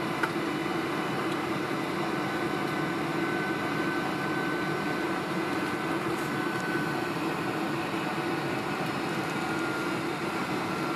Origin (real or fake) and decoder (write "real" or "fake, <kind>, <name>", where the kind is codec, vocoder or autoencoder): real